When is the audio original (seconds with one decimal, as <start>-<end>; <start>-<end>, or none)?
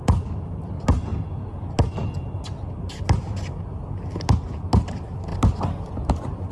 0.0-6.5